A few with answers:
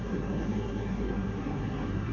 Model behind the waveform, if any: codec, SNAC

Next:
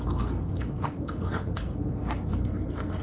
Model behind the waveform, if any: codec, SNAC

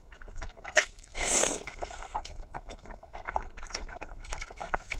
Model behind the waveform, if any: codec, SNAC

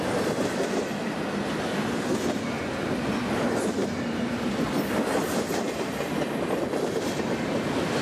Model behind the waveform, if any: none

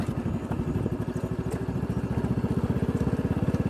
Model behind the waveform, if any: none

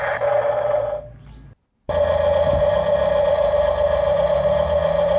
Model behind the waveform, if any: none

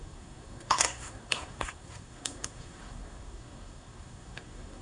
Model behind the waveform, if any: codec, SNAC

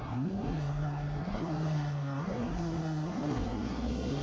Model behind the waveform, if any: codec, SNAC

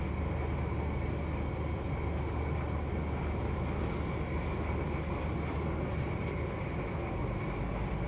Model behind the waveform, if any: none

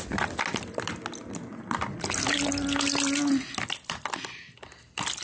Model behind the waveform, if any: none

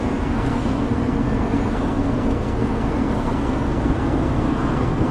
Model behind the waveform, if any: codec, SNAC